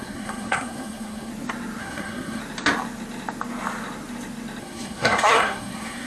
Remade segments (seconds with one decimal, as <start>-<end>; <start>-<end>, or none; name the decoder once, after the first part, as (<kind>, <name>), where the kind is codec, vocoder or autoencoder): 0.0-1.3 (codec, SNAC); 1.8-2.4; 4.6-6.1